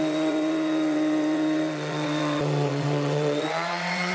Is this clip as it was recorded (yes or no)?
no